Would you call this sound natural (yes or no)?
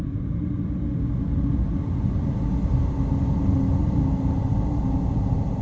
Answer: yes